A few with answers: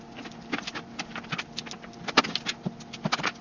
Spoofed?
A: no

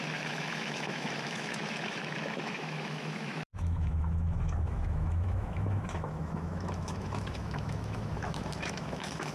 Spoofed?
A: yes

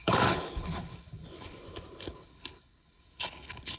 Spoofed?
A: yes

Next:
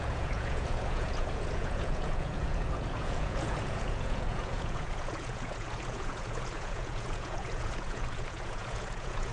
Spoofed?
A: yes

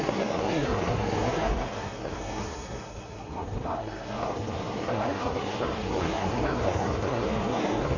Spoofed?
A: yes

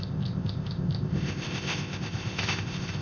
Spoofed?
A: yes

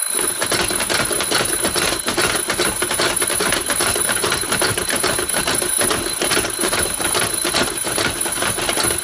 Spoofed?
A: yes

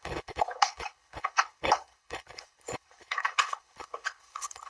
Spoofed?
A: yes